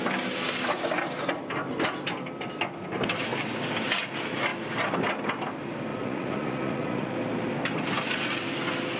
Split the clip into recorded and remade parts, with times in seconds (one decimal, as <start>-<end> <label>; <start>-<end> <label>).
0.0-5.9 recorded; 5.9-7.1 remade; 7.1-9.0 recorded